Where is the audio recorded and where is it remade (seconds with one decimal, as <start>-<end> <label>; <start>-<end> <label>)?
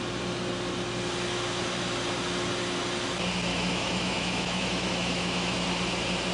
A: 0.0-3.5 recorded; 3.5-5.6 remade; 5.6-6.3 recorded